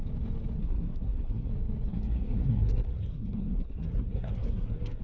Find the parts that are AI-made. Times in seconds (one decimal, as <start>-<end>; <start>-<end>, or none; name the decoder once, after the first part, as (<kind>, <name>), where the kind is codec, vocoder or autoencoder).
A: 0.6-1.5 (codec, SNAC); 1.9-5.0